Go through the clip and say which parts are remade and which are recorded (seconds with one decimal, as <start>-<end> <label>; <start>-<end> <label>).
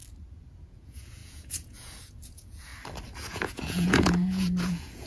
0.0-0.5 recorded; 0.5-2.7 remade; 2.7-3.3 recorded; 3.3-5.1 remade